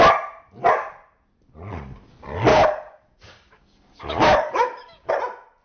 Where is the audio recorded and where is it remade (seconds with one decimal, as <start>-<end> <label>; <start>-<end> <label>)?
0.0-2.5 recorded; 2.5-5.1 remade; 5.1-5.6 recorded